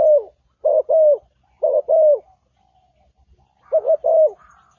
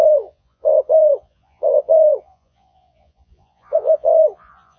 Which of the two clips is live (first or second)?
first